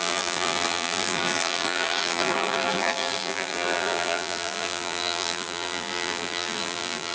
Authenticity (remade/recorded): remade